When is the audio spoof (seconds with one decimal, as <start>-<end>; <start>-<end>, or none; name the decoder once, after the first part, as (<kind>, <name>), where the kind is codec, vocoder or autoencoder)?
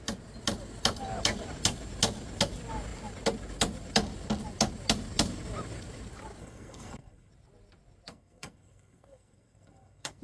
6.4-7.3 (codec, SNAC); 8.1-10.2